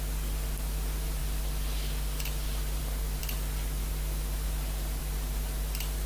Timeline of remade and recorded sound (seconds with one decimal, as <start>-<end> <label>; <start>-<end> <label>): 0.0-6.1 recorded